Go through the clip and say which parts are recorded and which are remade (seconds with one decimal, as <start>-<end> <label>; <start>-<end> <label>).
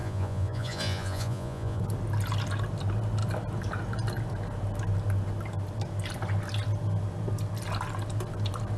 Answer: 0.0-1.8 remade; 1.8-8.8 recorded